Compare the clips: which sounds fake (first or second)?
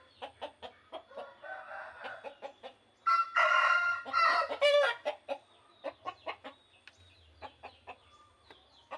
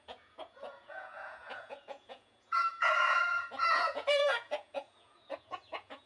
second